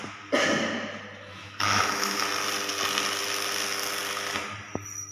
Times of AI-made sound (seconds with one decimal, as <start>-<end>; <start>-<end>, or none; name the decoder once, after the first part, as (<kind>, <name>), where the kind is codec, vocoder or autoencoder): 1.3-2.2 (autoencoder, DAC-VAE)